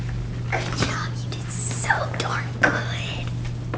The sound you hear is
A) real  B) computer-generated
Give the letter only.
A